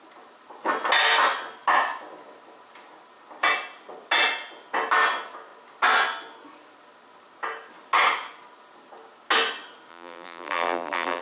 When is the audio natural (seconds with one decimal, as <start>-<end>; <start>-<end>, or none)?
0.0-9.9